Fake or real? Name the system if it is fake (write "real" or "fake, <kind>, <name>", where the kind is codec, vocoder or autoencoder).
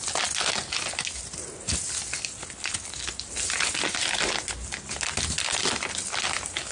real